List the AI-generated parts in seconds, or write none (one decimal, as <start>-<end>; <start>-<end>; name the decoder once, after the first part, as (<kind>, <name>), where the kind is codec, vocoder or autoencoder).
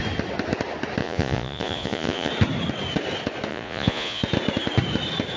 1.0-2.3 (vocoder, Vocos); 3.5-4.2